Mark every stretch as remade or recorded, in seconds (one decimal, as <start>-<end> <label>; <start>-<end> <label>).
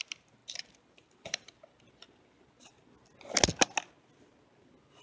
0.0-0.4 recorded; 0.4-1.5 remade; 1.5-5.0 recorded